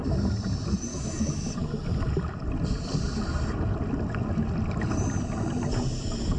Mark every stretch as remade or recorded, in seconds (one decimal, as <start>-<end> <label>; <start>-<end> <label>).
0.0-0.9 recorded; 0.9-1.5 remade; 1.5-6.4 recorded